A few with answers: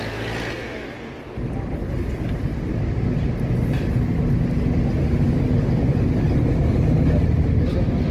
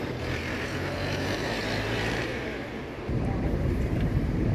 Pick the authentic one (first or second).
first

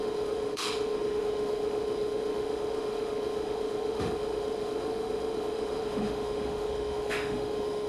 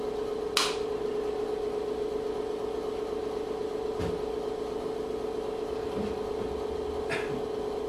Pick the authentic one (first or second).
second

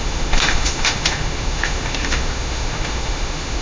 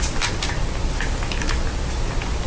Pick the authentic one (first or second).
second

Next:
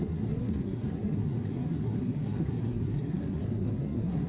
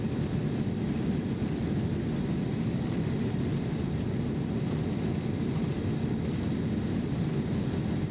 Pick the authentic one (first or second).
second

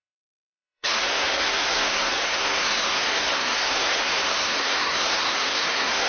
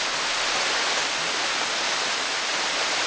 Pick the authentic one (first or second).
second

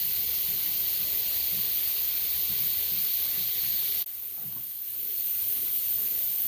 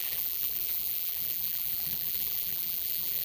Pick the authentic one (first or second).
first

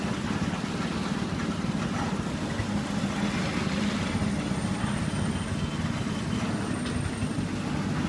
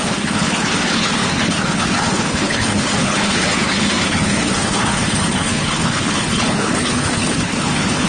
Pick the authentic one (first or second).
first